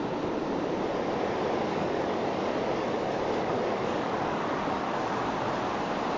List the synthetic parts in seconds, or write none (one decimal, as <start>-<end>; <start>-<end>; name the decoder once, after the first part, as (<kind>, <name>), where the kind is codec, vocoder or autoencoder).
1.7-5.4 (codec, DAC)